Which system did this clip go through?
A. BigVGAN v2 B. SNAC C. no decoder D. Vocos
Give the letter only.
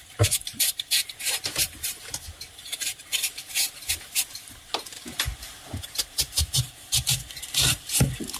A